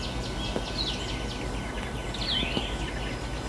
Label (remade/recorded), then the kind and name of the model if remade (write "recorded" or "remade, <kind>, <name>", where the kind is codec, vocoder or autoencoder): recorded